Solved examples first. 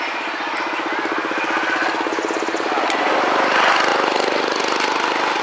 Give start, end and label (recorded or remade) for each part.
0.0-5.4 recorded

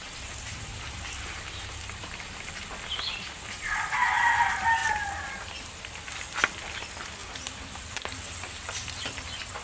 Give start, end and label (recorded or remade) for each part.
0.0-0.7 recorded; 0.7-2.6 remade; 2.6-4.8 recorded; 4.8-5.5 remade; 5.5-7.2 recorded; 7.2-7.7 remade; 7.7-9.6 recorded

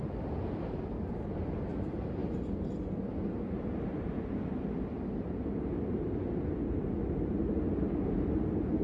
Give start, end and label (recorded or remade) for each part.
0.0-8.8 recorded

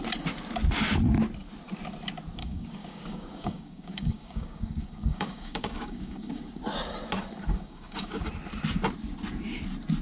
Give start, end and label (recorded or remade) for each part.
0.0-2.4 recorded; 2.4-6.6 remade; 6.6-7.5 recorded; 7.5-8.3 remade; 8.3-10.0 recorded

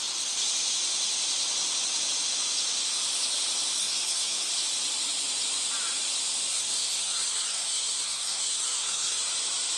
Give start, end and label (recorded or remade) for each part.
0.0-3.8 recorded; 3.8-4.5 remade; 4.5-6.5 recorded; 6.5-9.2 remade; 9.2-9.8 recorded

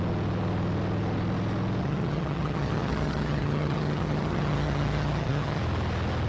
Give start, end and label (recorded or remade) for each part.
0.0-1.8 recorded; 1.8-5.6 remade; 5.6-6.3 recorded

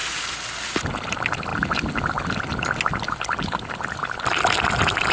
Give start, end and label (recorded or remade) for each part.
0.0-5.1 recorded